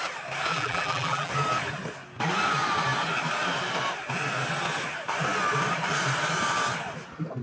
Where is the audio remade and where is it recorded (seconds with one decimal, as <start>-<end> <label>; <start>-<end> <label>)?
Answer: 0.0-0.5 recorded; 0.5-1.3 remade; 1.3-7.4 recorded